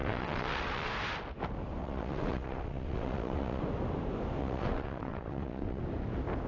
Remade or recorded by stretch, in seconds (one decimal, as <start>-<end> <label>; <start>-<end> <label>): 0.0-0.9 remade; 0.9-1.8 recorded; 1.8-3.6 remade; 3.6-4.4 recorded; 4.4-5.8 remade; 5.8-6.5 recorded